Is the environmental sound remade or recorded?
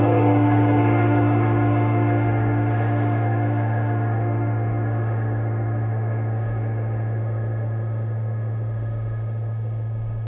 remade